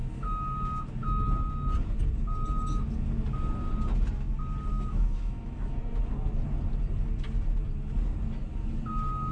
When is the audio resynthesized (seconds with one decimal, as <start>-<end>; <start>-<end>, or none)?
4.7-5.8